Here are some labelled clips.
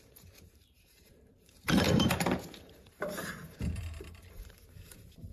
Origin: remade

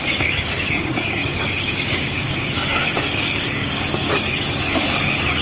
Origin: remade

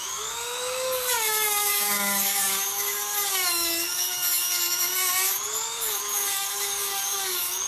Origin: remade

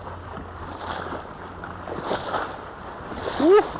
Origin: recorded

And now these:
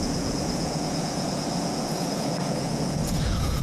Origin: remade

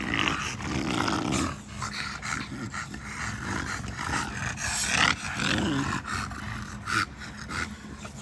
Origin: recorded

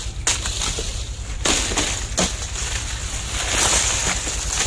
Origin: recorded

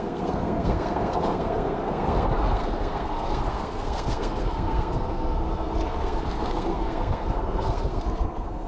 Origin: remade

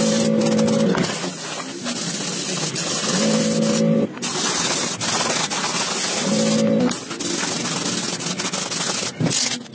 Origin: recorded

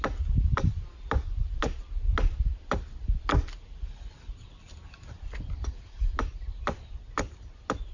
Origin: recorded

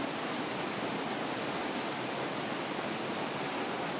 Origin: recorded